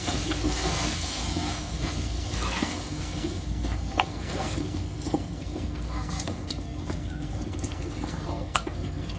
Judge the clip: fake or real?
fake